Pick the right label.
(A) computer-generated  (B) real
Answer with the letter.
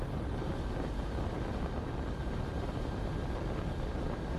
B